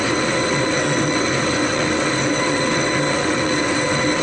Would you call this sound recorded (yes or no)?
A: no